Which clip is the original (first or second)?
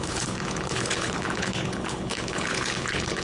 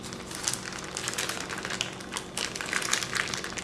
second